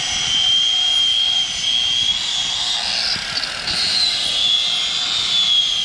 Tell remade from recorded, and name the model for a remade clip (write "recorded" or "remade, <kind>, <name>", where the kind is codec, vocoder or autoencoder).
recorded